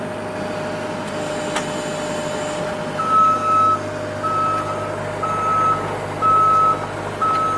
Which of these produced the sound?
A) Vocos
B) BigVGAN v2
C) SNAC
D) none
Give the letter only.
D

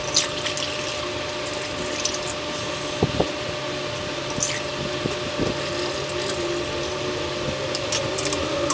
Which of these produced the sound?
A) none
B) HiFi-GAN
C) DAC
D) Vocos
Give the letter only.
A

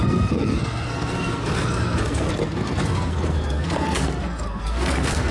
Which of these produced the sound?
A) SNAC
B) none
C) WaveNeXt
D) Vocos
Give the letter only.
A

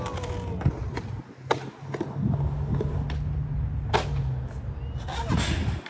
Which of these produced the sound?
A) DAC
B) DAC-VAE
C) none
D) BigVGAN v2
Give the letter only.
C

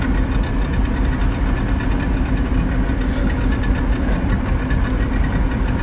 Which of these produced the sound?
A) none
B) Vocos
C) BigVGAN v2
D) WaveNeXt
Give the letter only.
A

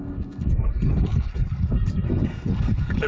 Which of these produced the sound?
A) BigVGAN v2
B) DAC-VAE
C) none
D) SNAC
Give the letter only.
D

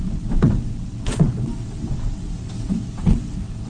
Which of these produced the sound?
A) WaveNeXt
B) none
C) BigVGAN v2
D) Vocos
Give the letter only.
A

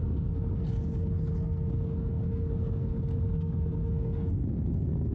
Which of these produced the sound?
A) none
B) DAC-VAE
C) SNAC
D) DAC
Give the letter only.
C